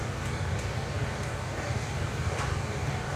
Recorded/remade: remade